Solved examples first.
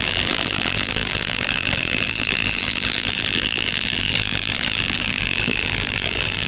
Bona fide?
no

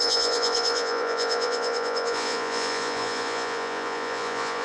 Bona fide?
no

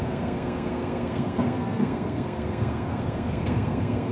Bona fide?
no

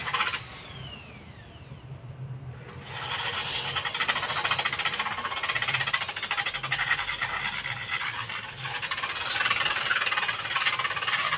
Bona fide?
yes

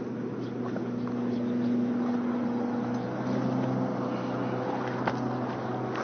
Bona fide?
yes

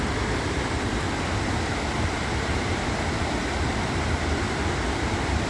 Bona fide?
no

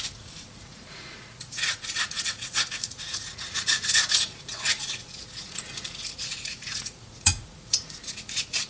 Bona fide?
no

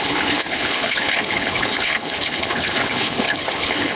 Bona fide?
no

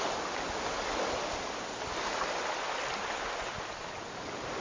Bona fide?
yes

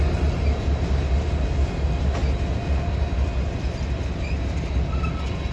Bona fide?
yes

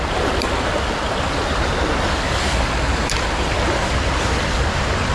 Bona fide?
yes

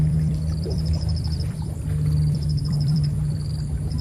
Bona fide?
no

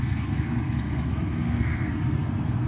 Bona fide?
no